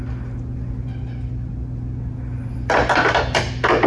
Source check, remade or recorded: recorded